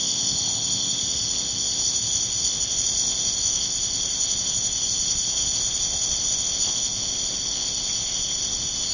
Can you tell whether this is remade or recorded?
remade